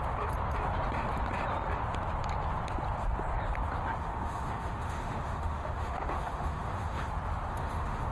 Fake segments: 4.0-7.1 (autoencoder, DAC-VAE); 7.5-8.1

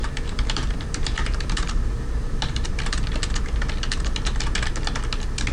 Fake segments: 0.0-2.7 (vocoder, BigVGAN v2)

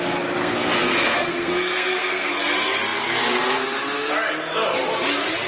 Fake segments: 0.4-2.3 (codec, SNAC)

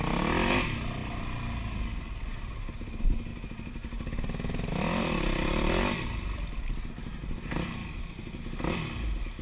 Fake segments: 3.3-6.9 (vocoder, BigVGAN v2); 7.8-8.4

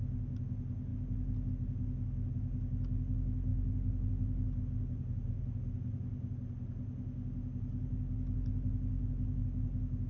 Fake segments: none

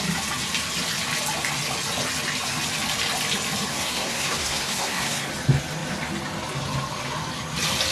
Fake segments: 3.7-5.3 (codec, SNAC)